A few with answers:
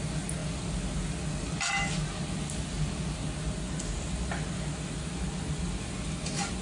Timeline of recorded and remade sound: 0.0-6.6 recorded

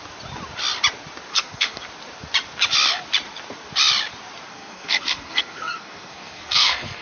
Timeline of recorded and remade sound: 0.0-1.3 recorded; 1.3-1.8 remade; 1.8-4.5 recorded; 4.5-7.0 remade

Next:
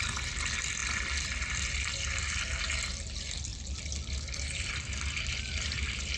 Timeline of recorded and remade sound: 0.0-6.2 recorded

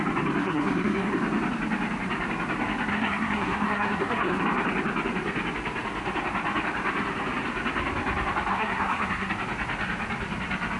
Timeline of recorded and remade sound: 0.0-0.4 recorded; 0.4-1.1 remade; 1.1-2.9 recorded; 2.9-4.4 remade; 4.4-8.5 recorded; 8.5-9.3 remade; 9.3-10.8 recorded

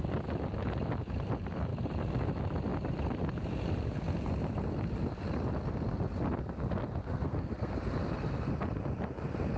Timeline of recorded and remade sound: 0.0-7.0 recorded; 7.0-7.7 remade; 7.7-9.6 recorded